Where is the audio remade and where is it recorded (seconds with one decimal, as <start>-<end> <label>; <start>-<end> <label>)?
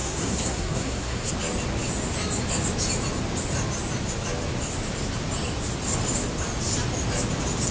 0.0-1.3 remade; 1.3-7.7 recorded